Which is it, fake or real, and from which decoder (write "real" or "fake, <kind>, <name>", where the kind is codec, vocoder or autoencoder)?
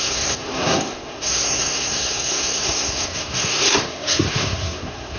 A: fake, codec, SNAC